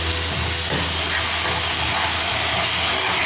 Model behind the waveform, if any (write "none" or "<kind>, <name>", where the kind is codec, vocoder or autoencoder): none